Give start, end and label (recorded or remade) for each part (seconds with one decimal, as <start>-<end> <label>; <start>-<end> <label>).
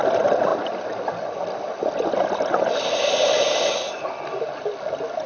0.0-5.3 recorded